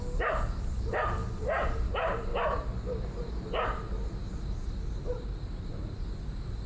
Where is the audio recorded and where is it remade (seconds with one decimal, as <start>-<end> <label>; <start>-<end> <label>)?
0.0-6.7 recorded